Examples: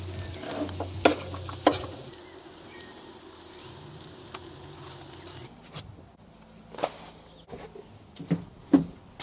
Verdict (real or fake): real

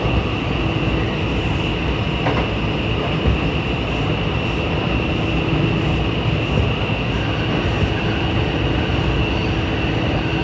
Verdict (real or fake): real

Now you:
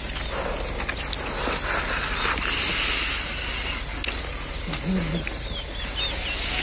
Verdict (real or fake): real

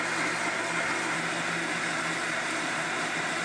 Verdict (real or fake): real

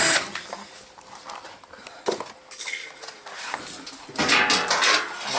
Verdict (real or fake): real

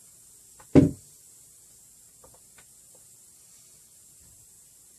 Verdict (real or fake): real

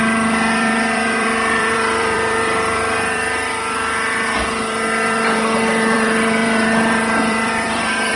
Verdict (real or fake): fake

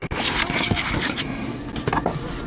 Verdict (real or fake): real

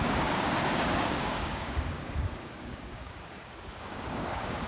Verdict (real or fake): fake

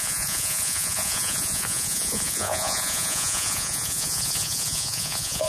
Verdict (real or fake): fake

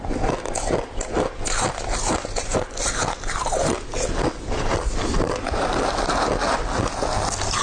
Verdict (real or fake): real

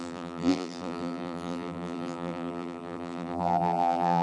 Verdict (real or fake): fake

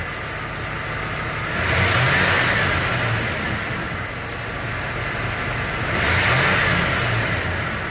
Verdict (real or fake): real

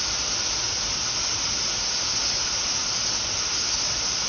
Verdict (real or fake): real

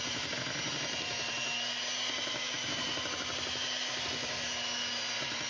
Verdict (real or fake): real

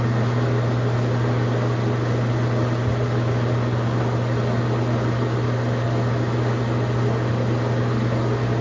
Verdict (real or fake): real